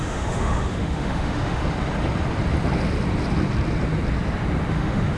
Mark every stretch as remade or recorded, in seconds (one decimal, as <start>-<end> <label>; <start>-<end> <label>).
0.0-1.6 remade; 1.6-4.7 recorded; 4.7-5.2 remade